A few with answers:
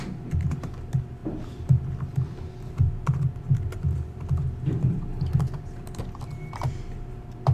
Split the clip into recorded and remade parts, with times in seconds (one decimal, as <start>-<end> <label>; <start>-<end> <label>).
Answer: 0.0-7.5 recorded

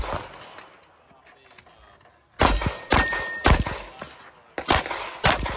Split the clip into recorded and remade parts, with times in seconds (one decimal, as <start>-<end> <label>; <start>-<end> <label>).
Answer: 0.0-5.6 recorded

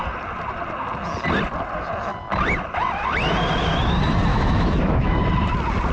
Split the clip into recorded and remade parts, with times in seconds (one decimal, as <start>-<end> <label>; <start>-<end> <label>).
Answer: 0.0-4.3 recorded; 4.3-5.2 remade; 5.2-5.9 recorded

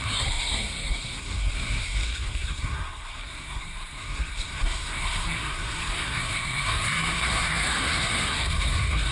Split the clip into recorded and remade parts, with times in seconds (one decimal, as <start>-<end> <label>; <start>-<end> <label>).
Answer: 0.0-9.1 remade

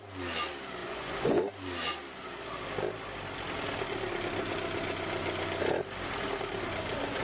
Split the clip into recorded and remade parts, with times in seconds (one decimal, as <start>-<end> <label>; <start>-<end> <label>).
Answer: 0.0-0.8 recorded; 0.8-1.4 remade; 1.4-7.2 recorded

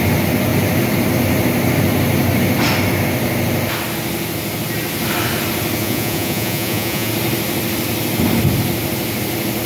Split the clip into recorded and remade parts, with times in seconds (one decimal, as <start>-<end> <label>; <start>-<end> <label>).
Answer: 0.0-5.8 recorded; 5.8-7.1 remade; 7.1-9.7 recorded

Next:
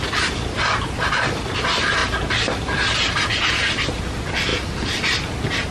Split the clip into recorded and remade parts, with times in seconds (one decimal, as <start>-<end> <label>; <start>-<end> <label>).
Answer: 0.0-5.7 recorded